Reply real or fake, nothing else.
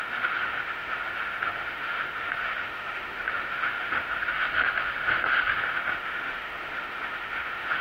fake